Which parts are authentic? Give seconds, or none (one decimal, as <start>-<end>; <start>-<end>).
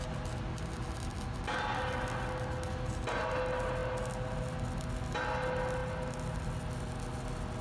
0.0-7.6